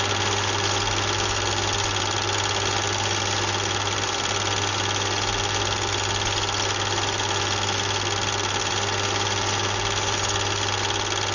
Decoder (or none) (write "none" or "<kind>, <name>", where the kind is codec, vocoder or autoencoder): none